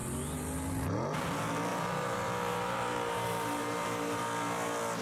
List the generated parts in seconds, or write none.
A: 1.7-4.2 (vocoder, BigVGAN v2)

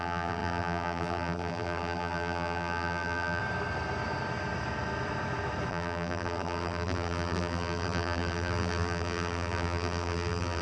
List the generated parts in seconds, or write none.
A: 0.0-3.4 (vocoder, BigVGAN v2); 5.7-10.6

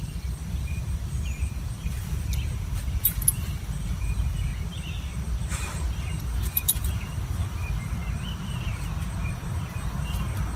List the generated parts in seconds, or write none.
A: 0.0-4.5 (vocoder, BigVGAN v2); 6.2-8.0; 9.3-10.6

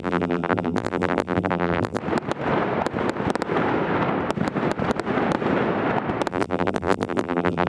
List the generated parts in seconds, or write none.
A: 0.0-2.0 (vocoder, BigVGAN v2); 6.3-7.7

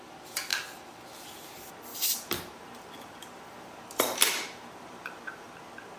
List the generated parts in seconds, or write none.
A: 1.9-5.5 (vocoder, BigVGAN v2)